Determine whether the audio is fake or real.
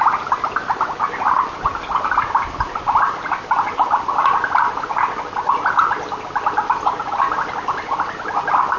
real